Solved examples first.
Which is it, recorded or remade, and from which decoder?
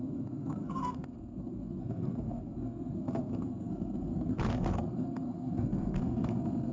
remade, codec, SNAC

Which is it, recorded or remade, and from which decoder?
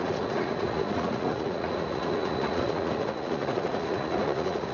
remade, vocoder, Vocos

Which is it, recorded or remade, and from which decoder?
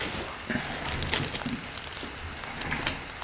recorded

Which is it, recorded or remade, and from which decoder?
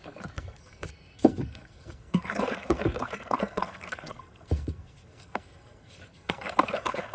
remade, codec, SNAC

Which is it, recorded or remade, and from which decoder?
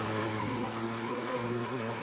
remade, codec, SNAC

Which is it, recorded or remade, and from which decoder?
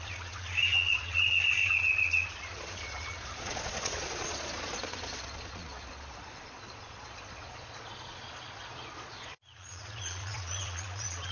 remade, vocoder, Vocos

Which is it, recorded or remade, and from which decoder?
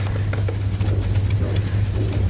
remade, vocoder, BigVGAN v2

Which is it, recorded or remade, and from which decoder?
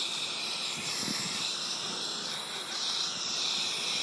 remade, vocoder, BigVGAN v2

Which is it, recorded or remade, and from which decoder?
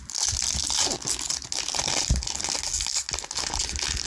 recorded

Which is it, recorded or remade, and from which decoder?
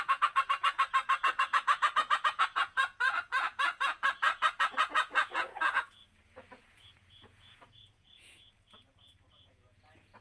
remade, vocoder, Vocos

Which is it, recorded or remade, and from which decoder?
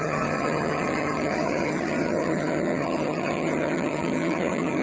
remade, vocoder, HiFi-GAN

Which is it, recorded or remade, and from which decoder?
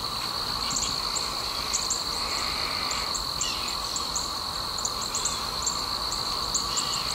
remade, vocoder, BigVGAN v2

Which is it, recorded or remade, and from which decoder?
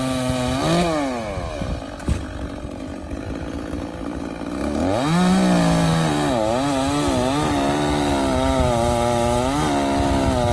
recorded